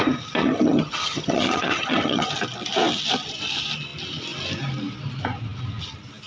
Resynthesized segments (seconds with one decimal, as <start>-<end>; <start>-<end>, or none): 0.4-2.3

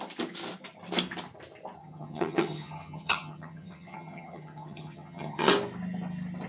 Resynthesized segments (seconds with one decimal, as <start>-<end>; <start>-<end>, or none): 1.8-5.5

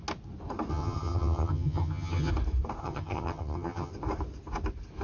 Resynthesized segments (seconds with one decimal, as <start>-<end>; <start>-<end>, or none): 0.7-2.3; 2.8-3.9

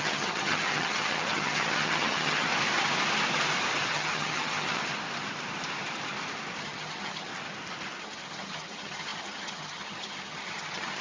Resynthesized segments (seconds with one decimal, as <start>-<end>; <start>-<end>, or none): 0.0-2.5; 3.9-4.8; 6.6-7.3; 8.0-11.0

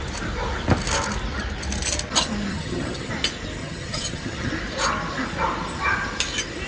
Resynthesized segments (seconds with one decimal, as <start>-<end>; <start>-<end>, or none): 2.5-3.1; 3.6-4.5

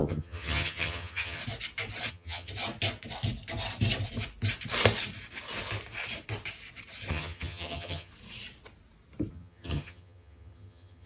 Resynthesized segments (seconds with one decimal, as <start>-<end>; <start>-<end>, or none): 0.0-1.4; 2.1-2.5; 7.1-8.1; 9.3-11.1

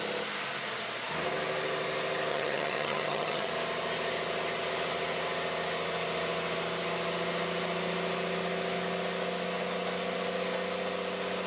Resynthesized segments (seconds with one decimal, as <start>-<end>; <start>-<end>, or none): 2.3-3.5

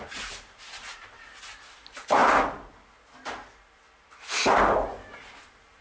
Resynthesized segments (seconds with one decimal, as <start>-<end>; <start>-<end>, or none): none